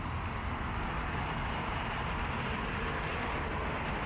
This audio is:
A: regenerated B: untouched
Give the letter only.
B